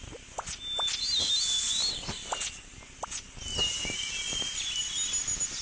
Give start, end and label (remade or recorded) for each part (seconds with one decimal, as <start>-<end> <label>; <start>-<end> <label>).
0.0-1.8 recorded; 1.8-2.8 remade; 2.8-3.5 recorded; 3.5-4.6 remade; 4.6-5.6 recorded